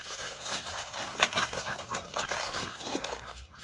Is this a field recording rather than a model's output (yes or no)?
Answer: no